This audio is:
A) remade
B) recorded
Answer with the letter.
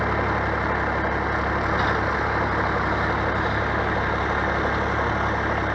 B